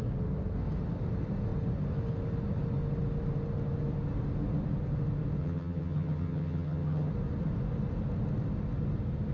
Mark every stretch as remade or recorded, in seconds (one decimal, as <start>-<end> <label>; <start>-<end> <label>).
0.0-5.4 recorded; 5.4-7.1 remade; 7.1-9.3 recorded